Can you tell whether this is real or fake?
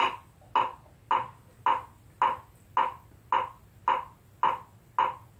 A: real